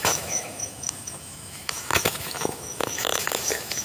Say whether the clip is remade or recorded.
remade